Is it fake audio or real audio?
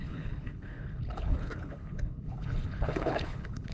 fake